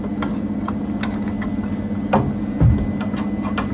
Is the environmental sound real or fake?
real